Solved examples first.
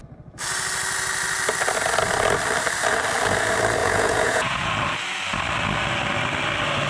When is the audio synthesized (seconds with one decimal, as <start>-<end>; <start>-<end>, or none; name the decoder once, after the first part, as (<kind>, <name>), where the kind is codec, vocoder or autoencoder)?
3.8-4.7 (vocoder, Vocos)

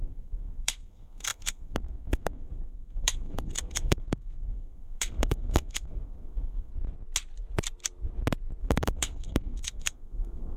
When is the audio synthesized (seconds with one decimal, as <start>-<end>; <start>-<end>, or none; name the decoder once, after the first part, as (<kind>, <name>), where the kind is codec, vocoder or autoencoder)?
0.0-6.7 (codec, SNAC); 8.6-10.6

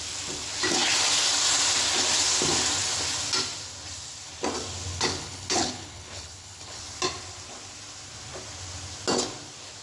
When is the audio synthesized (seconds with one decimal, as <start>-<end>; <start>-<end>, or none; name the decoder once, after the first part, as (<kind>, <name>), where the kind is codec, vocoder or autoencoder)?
4.9-6.8 (codec, HILCodec)

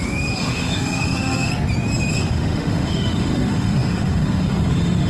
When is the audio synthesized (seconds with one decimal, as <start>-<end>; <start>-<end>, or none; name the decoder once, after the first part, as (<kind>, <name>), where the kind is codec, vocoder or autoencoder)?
0.0-1.5 (autoencoder, DAC-VAE); 2.1-5.1

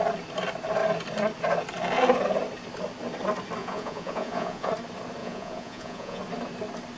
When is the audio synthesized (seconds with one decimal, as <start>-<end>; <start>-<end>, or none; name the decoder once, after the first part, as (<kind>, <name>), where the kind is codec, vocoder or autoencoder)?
3.6-4.7 (vocoder, Vocos); 5.2-6.2